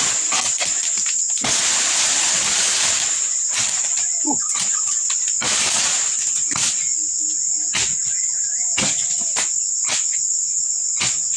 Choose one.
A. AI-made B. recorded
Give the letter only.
B